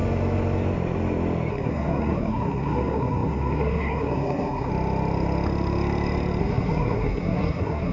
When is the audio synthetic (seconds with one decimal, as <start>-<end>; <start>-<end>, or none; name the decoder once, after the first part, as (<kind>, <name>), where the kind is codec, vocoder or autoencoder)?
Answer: 1.5-4.7 (codec, SNAC); 6.4-7.9